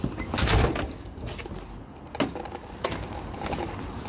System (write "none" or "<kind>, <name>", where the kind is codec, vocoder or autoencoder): none